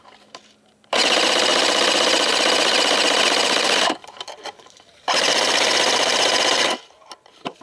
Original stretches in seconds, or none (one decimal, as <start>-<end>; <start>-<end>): none